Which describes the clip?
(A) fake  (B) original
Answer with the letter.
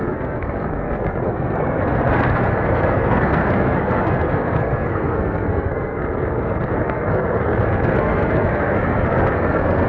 A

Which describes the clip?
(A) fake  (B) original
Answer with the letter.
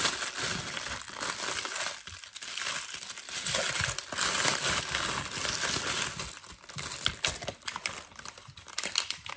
B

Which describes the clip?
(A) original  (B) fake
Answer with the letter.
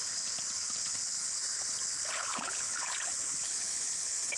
B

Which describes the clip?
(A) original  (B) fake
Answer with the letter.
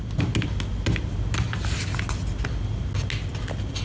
A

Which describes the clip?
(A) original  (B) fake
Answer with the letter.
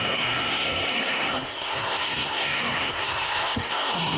B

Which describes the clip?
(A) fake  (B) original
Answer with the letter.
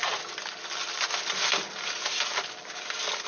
B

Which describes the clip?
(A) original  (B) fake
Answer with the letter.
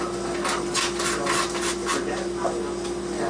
A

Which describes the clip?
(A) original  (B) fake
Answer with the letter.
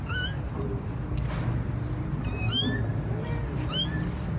A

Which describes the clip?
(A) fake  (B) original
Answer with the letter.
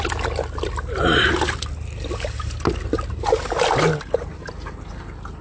B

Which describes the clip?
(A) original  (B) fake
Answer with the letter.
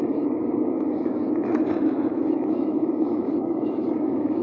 B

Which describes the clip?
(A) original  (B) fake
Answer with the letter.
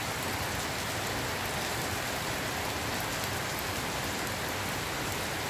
A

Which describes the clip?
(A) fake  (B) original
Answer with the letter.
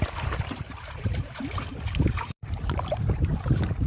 A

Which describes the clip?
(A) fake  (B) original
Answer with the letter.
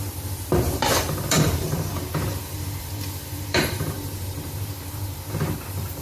A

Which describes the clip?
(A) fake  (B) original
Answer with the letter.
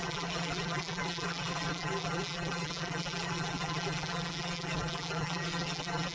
A